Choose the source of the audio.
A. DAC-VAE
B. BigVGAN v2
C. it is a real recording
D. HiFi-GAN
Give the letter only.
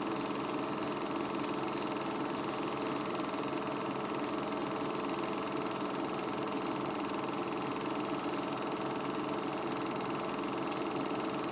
C